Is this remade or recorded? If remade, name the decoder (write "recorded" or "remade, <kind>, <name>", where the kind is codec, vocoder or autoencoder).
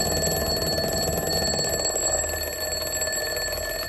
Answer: recorded